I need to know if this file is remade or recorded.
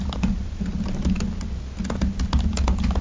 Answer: recorded